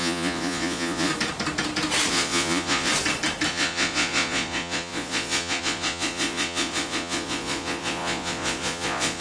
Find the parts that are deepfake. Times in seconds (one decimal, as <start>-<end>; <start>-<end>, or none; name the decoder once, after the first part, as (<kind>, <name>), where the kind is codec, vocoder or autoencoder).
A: 0.0-1.1 (vocoder, Vocos); 2.1-2.9; 3.5-9.2